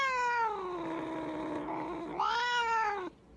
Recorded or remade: recorded